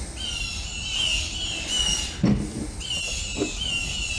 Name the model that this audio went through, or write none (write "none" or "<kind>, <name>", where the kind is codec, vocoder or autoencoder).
none